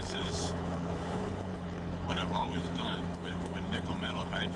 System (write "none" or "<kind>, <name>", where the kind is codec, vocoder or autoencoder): codec, HILCodec